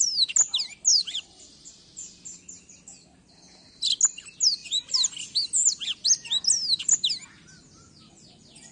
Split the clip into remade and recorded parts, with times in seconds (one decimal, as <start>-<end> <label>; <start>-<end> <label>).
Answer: 0.0-0.9 recorded; 0.9-1.7 remade; 1.7-8.7 recorded